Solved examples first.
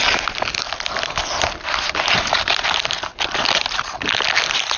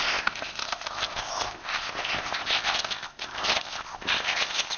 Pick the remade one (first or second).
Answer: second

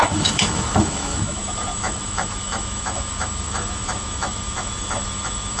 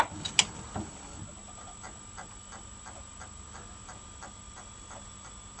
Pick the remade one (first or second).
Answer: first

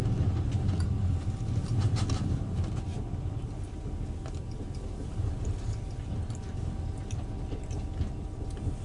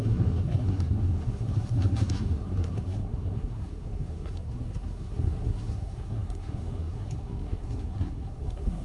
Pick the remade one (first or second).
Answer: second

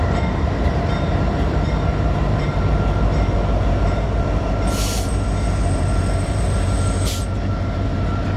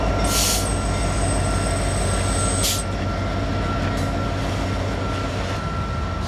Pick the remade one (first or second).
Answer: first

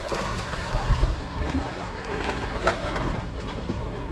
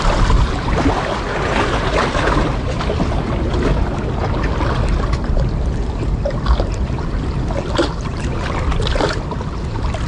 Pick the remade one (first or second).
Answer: first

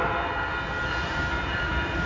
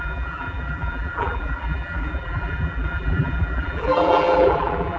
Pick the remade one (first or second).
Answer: second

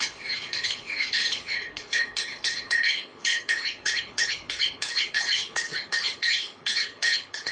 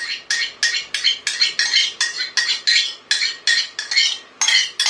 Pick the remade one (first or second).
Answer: first